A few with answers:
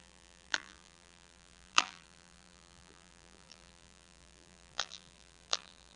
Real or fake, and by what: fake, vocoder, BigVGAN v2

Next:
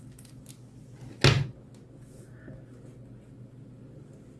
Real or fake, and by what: real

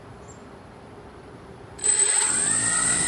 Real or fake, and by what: fake, vocoder, BigVGAN v2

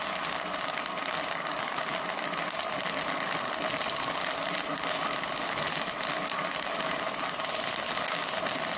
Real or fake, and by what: real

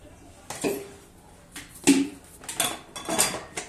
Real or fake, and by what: real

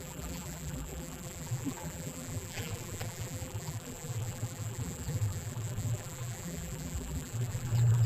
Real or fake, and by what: fake, vocoder, BigVGAN v2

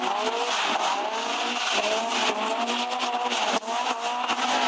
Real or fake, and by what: real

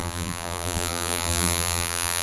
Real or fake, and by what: fake, vocoder, BigVGAN v2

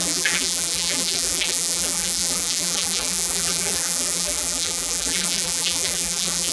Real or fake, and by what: fake, vocoder, BigVGAN v2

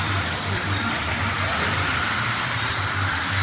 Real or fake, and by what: fake, vocoder, BigVGAN v2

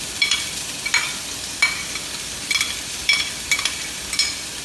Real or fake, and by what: fake, vocoder, BigVGAN v2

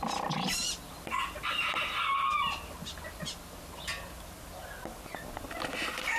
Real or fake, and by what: real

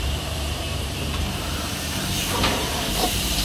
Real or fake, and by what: fake, vocoder, BigVGAN v2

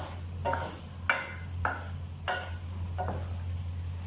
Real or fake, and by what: real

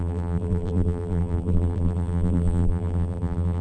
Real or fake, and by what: fake, vocoder, BigVGAN v2